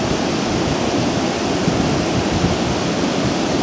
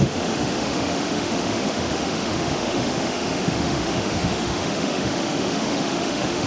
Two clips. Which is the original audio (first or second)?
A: first